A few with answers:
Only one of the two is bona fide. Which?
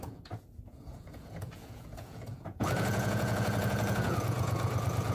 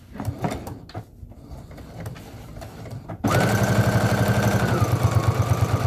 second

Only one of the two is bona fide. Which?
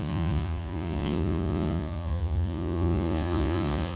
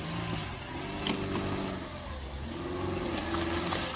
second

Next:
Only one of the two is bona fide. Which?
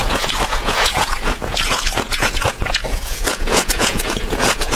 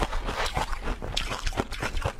second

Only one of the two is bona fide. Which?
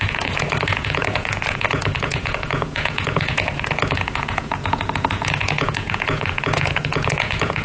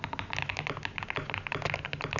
second